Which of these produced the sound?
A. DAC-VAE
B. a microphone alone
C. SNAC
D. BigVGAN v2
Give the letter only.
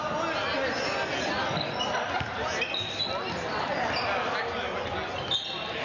B